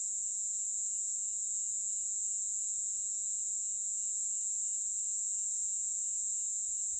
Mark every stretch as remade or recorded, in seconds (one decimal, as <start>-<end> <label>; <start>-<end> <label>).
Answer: 0.0-7.0 recorded